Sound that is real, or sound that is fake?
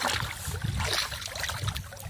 real